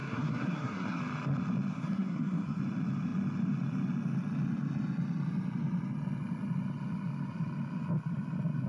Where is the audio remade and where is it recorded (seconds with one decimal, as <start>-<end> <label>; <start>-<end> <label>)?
0.0-1.0 remade; 1.0-1.7 recorded; 1.7-2.6 remade; 2.6-8.7 recorded